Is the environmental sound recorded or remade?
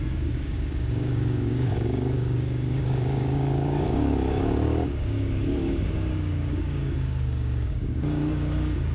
remade